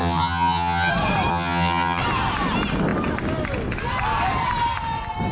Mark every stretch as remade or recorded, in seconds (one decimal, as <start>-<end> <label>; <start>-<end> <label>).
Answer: 0.0-0.9 remade; 0.9-1.3 recorded; 1.3-2.0 remade; 2.0-5.3 recorded